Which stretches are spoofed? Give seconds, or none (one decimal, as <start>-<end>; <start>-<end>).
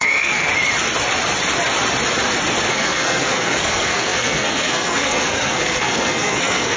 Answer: 0.0-0.5; 2.7-6.8